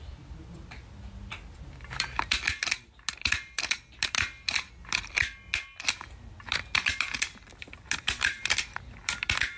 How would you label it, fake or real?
real